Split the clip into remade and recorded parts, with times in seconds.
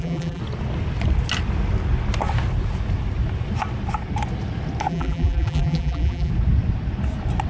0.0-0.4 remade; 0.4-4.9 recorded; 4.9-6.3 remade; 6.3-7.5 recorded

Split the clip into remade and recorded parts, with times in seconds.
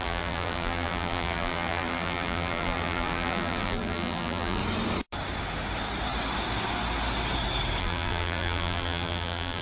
0.0-4.6 remade; 4.6-7.8 recorded; 7.8-9.6 remade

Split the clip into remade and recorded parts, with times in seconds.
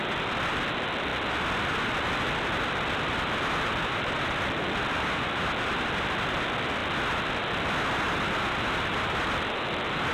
0.0-1.1 remade; 1.1-2.4 recorded; 2.4-6.8 remade; 6.8-8.0 recorded; 8.0-10.1 remade